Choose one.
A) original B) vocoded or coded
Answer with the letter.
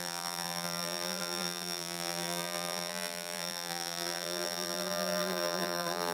B